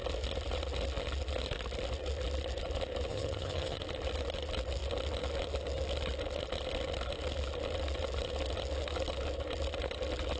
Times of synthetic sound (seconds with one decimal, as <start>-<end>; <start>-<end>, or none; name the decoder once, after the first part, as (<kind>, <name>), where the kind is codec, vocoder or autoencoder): 3.1-3.8 (vocoder, HiFi-GAN)